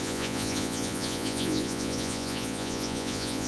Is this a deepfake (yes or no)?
yes